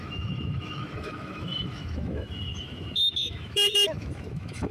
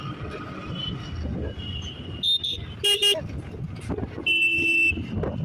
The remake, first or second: first